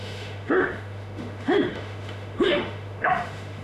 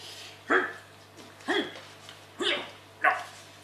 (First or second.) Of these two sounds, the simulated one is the first